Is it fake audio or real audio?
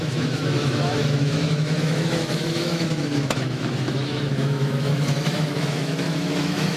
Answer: fake